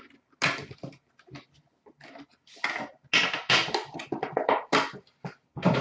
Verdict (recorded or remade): recorded